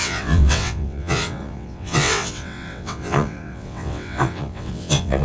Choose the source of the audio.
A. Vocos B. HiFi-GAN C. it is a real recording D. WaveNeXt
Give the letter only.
D